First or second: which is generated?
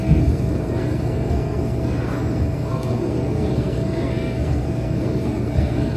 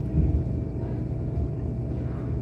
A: first